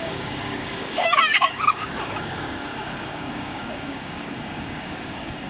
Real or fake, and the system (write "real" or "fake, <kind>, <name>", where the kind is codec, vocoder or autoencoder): fake, codec, DAC